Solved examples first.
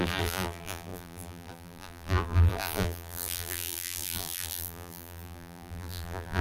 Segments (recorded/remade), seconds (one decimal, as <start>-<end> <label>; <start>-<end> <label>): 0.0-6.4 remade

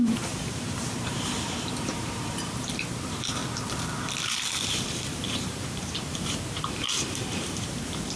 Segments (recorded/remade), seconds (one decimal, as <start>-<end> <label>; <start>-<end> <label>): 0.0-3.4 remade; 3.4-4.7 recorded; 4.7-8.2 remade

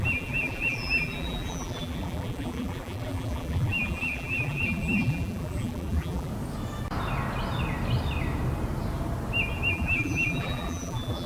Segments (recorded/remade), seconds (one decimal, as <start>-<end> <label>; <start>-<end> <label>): 0.0-6.3 remade; 6.3-9.7 recorded; 9.7-11.3 remade

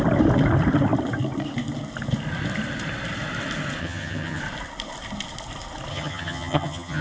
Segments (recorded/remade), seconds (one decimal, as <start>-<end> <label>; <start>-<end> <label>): 0.0-3.8 recorded; 3.8-4.4 remade; 4.4-5.9 recorded; 5.9-7.0 remade

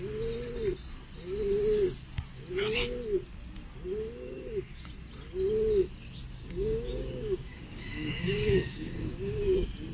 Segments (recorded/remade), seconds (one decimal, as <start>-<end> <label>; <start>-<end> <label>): 0.0-6.4 recorded; 6.4-9.4 remade; 9.4-9.9 recorded

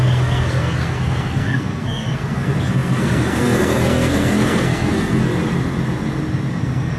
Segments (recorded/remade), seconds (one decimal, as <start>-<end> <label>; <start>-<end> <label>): 0.0-5.3 remade; 5.3-6.5 recorded; 6.5-7.0 remade

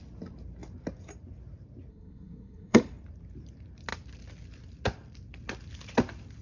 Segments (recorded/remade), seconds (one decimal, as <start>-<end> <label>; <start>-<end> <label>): 0.0-1.9 recorded; 1.9-2.8 remade; 2.8-6.4 recorded